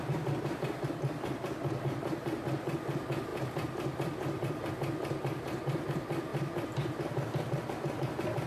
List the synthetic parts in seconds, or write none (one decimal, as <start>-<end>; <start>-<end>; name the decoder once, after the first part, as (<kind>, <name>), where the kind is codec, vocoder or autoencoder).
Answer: 3.3-4.7 (vocoder, BigVGAN v2); 6.3-7.7